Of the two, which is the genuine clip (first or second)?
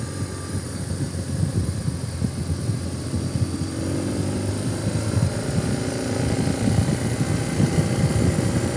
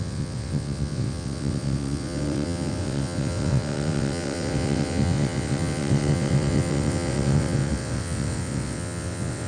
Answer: first